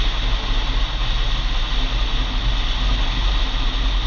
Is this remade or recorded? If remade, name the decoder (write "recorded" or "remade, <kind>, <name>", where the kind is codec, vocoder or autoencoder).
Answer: recorded